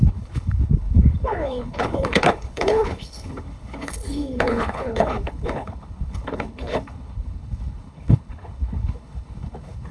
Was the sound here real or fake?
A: fake